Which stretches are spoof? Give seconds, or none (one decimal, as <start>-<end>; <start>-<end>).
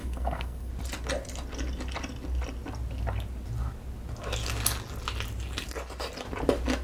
0.0-0.7